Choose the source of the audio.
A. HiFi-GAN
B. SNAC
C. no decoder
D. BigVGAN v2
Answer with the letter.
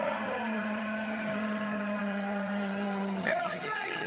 A